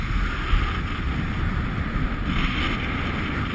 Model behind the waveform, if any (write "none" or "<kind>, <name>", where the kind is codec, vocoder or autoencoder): none